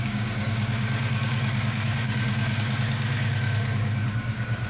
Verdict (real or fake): fake